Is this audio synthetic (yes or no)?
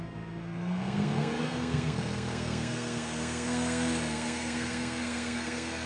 yes